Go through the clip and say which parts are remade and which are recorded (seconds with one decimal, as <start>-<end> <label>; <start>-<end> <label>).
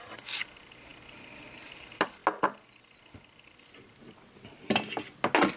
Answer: 0.0-5.6 recorded